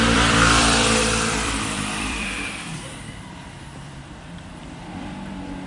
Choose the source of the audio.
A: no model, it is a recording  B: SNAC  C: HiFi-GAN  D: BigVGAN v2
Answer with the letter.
D